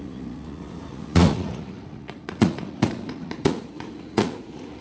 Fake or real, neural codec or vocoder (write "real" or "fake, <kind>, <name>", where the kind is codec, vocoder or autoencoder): fake, vocoder, Vocos